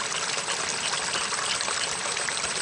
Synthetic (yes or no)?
no